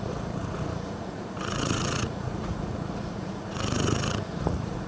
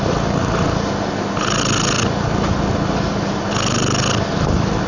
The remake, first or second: first